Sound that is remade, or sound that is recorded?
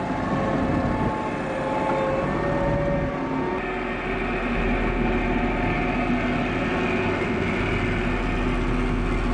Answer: recorded